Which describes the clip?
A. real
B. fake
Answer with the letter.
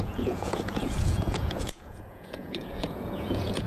B